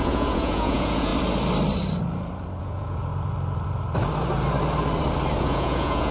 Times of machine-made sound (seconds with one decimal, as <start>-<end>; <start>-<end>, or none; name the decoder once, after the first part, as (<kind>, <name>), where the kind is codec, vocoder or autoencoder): 0.0-1.1 (vocoder, Vocos); 2.6-3.1; 5.4-6.1